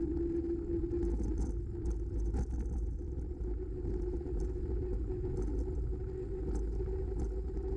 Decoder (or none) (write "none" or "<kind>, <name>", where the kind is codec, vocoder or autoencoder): none